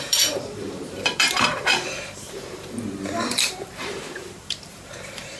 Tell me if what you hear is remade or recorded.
remade